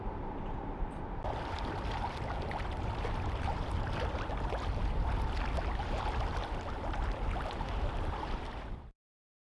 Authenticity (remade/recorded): recorded